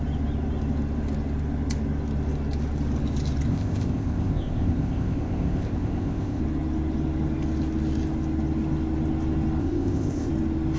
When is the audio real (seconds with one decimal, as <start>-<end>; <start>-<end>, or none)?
0.0-3.5; 6.4-9.6; 10.3-10.8